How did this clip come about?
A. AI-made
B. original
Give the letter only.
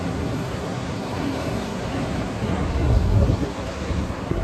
A